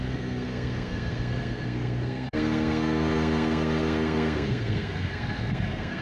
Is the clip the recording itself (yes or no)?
no